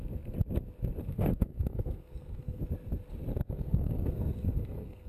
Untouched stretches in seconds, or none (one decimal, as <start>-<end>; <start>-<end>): 0.0-1.0; 2.6-3.3